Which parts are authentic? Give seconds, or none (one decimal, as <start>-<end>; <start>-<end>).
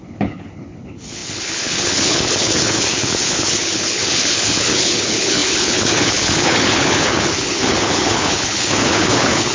none